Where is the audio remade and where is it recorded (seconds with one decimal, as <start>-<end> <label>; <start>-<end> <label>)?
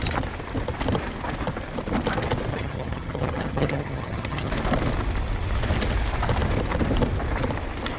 0.0-2.5 recorded; 2.5-4.5 remade; 4.5-8.0 recorded